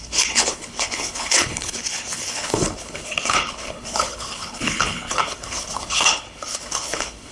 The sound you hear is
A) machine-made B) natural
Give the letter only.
A